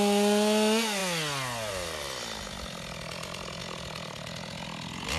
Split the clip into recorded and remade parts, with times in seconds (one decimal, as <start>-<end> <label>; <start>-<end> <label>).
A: 0.0-5.2 recorded

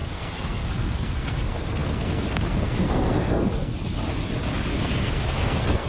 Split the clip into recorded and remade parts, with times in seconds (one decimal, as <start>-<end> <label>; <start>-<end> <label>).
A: 0.0-3.7 remade; 3.7-4.7 recorded; 4.7-5.9 remade